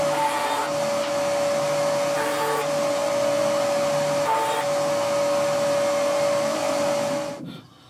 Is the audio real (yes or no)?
yes